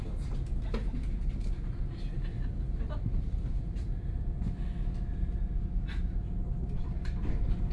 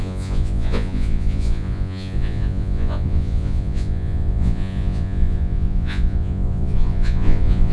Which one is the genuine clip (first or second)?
first